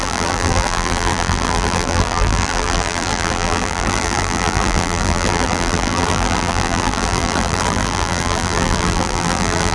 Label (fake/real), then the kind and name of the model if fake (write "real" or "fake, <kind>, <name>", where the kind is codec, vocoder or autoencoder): fake, vocoder, BigVGAN v2